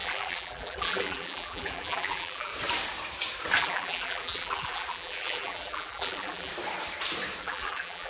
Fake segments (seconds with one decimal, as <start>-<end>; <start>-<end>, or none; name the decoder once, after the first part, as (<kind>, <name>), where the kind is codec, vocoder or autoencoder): 0.0-2.5 (vocoder, BigVGAN v2); 3.6-6.5; 7.4-8.1

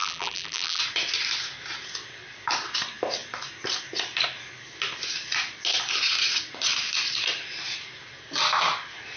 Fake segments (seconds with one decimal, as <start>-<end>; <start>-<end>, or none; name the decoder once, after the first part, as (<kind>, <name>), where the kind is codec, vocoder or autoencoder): 0.0-0.8 (vocoder, BigVGAN v2)

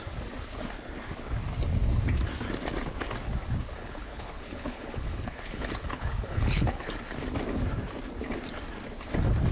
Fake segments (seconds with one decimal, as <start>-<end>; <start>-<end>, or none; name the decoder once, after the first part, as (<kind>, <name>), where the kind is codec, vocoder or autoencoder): 3.8-6.9 (codec, HILCodec)

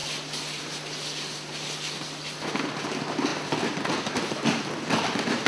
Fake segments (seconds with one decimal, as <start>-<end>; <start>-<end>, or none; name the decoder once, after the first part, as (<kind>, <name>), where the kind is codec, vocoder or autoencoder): none

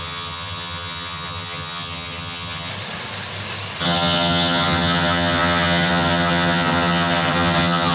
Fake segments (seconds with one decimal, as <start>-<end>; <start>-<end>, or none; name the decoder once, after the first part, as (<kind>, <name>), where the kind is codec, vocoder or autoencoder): 0.0-2.7 (vocoder, HiFi-GAN); 3.8-7.9

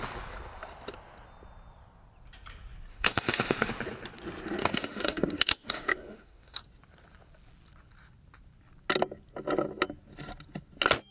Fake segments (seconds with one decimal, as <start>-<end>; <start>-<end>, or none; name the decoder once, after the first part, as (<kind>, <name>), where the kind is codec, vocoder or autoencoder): 2.9-3.7 (autoencoder, DAC-VAE); 4.6-6.6